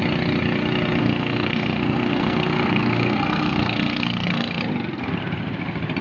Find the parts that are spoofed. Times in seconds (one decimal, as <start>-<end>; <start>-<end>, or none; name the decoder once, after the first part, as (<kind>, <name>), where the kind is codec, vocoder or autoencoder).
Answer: 1.0-4.6 (codec, SNAC)